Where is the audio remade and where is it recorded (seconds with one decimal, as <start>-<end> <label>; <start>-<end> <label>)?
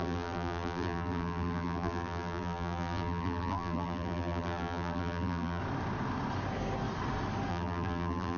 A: 0.0-5.6 remade; 5.6-7.5 recorded; 7.5-8.4 remade